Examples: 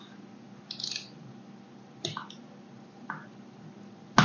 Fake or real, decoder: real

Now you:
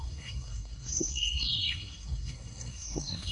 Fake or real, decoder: fake, codec, SNAC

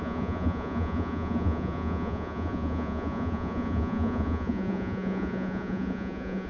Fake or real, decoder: fake, vocoder, Vocos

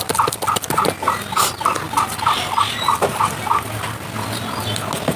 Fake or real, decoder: real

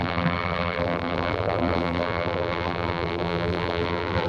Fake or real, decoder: fake, vocoder, BigVGAN v2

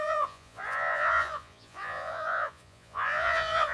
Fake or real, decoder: fake, vocoder, Vocos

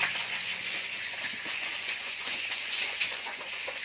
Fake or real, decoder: fake, vocoder, Vocos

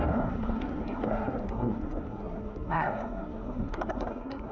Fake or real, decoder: fake, codec, SNAC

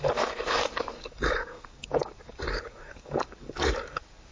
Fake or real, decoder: fake, codec, DAC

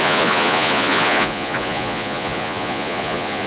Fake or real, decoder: fake, vocoder, Vocos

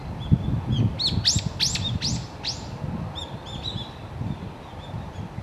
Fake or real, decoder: real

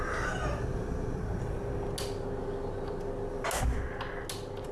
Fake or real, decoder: real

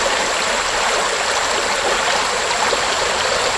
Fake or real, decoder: real